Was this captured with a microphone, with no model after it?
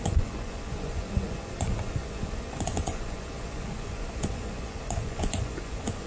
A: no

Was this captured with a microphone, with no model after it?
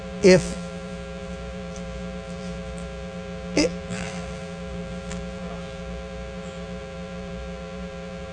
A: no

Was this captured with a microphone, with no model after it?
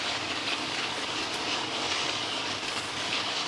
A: no